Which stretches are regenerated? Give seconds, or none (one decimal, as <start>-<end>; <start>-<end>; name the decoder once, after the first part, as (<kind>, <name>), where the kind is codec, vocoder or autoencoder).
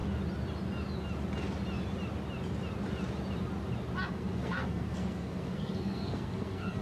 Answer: 4.1-6.8 (codec, SNAC)